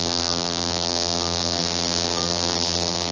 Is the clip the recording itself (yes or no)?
no